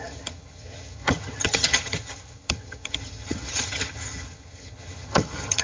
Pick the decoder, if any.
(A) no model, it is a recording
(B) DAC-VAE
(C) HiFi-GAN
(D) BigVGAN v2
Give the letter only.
C